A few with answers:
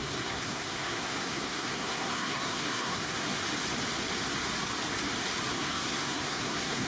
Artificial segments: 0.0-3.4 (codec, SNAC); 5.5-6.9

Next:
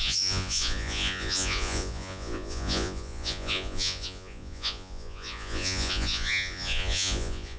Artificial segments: 0.0-7.6 (vocoder, Vocos)

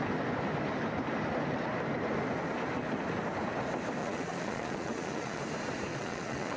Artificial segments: 4.0-5.4 (vocoder, Vocos); 5.9-6.6

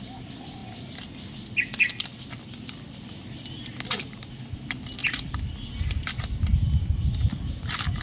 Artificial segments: 0.0-0.6 (vocoder, BigVGAN v2); 2.0-5.0; 5.8-8.0

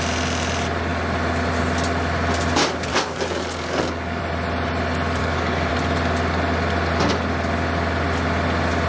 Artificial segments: 2.9-4.2 (codec, DAC); 5.2-5.7

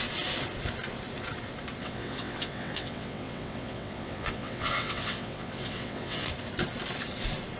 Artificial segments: 1.8-6.3 (vocoder, WaveNeXt)